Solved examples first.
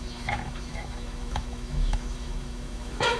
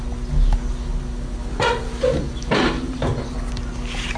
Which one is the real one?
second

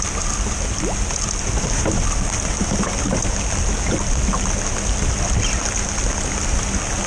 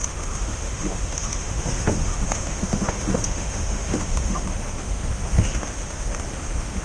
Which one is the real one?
first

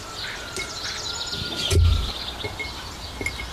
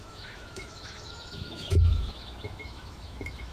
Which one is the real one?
first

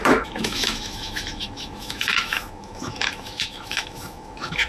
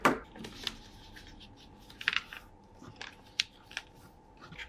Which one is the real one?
second